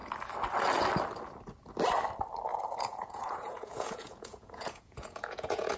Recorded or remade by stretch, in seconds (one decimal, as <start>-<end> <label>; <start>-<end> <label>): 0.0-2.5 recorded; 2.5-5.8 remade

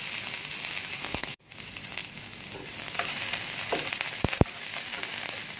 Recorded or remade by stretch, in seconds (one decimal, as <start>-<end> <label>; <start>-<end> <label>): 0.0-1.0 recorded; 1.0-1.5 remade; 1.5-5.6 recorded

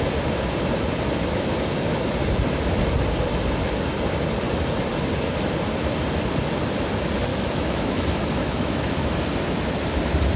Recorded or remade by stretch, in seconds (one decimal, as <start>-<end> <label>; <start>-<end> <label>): 0.0-7.3 recorded; 7.3-9.2 remade; 9.2-10.4 recorded